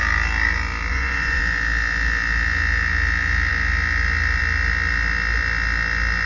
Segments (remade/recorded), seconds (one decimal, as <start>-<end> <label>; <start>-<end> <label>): 0.0-0.9 recorded; 0.9-1.4 remade; 1.4-6.3 recorded